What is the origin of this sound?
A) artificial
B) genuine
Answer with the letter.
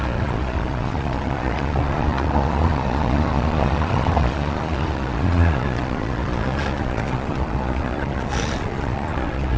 A